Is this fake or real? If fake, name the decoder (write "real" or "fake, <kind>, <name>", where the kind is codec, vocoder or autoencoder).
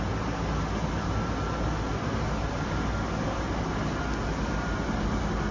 real